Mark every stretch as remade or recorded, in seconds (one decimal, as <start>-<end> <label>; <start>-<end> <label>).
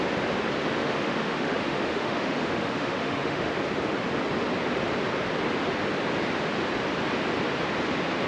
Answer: 0.0-0.8 recorded; 0.8-3.5 remade; 3.5-8.3 recorded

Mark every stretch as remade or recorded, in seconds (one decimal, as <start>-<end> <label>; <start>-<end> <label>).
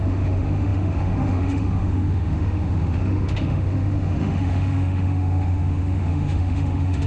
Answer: 0.0-7.1 remade